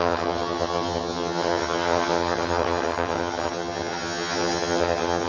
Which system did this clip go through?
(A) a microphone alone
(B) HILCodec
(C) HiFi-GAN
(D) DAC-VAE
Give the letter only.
C